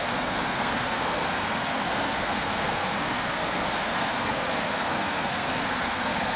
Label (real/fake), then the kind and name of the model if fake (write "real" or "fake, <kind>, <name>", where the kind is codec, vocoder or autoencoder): fake, codec, SNAC